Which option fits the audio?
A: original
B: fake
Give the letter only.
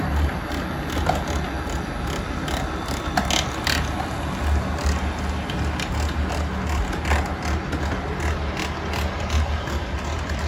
A